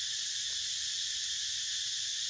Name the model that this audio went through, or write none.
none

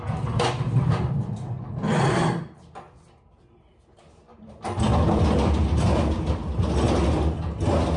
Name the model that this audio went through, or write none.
none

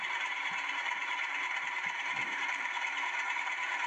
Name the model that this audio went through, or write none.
vocoder, BigVGAN v2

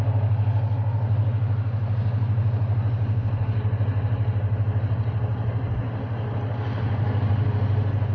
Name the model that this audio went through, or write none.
none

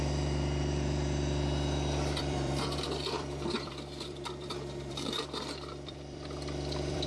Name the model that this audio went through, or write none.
vocoder, BigVGAN v2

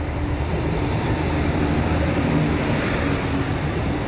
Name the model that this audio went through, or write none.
none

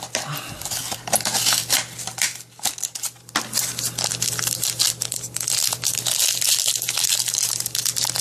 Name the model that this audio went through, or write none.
none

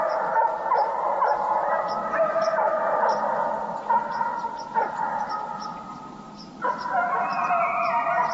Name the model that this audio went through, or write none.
none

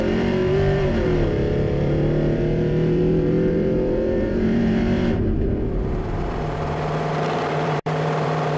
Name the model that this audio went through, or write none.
vocoder, BigVGAN v2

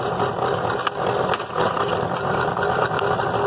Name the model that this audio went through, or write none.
none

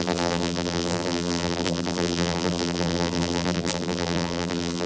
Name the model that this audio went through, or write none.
vocoder, BigVGAN v2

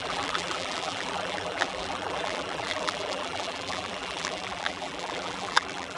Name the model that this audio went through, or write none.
vocoder, BigVGAN v2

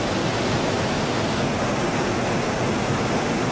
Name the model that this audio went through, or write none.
none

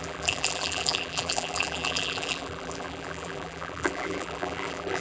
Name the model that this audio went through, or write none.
vocoder, BigVGAN v2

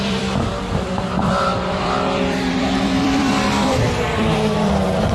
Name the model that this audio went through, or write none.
vocoder, BigVGAN v2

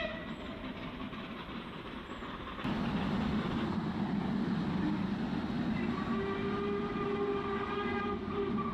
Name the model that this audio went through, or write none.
none